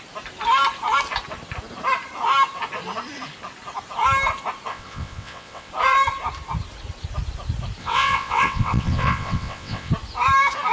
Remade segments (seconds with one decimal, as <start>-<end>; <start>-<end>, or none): 4.7-5.7; 7.8-9.9